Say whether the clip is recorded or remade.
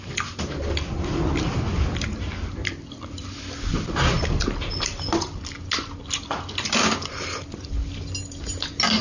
recorded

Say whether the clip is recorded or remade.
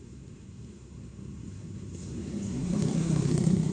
remade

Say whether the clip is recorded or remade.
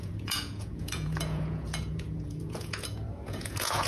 remade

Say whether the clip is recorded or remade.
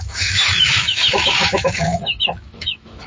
remade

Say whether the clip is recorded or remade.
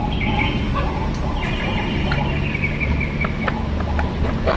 recorded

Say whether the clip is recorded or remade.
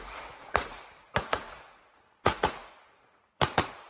remade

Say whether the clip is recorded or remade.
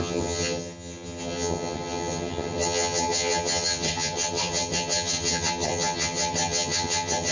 remade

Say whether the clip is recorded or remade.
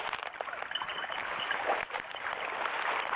recorded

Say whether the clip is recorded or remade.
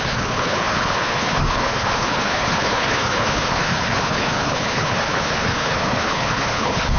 remade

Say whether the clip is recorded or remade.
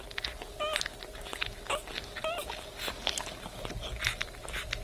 recorded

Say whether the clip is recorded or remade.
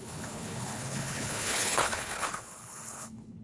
remade